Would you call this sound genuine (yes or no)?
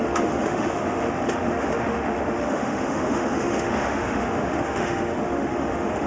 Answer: no